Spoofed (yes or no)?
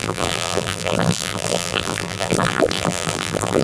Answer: yes